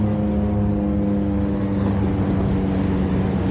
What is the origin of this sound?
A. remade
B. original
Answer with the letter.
B